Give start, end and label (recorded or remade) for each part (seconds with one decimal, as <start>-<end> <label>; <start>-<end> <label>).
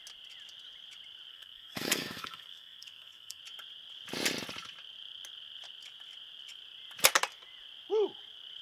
0.0-1.3 recorded; 1.3-3.4 remade; 3.4-8.6 recorded